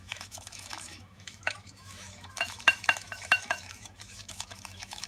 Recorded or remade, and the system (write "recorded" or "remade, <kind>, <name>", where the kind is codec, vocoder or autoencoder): remade, autoencoder, DAC-VAE